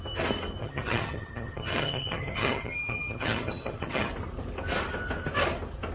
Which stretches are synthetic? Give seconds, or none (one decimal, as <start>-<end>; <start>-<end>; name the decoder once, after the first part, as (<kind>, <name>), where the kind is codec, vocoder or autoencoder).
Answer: 0.6-4.1 (vocoder, HiFi-GAN)